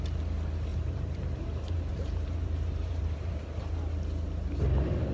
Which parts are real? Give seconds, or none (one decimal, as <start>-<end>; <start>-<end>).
0.0-0.7; 3.8-5.1